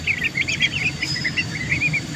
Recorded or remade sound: recorded